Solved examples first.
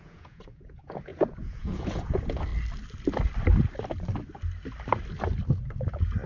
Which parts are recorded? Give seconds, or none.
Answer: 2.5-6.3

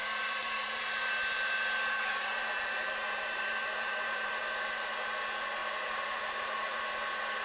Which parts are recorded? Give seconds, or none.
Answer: 4.4-5.6; 6.8-7.4

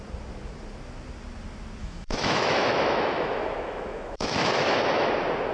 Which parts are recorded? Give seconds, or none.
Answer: 0.0-1.8; 5.1-5.5